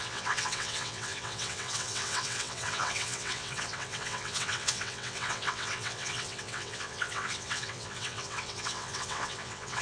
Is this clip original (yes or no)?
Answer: no